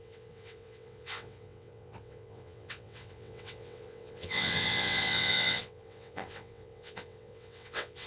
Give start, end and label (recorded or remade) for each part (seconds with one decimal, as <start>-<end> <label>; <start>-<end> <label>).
0.0-8.1 remade